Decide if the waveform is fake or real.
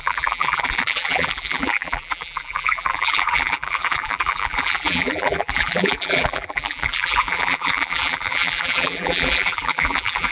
fake